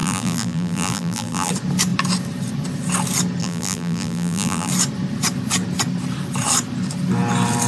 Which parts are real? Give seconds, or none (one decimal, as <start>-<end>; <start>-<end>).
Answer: 1.5-3.4; 4.7-7.7